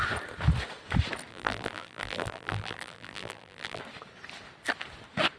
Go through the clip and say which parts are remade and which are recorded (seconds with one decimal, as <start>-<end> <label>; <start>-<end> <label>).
0.0-1.3 recorded; 1.3-3.8 remade; 3.8-5.4 recorded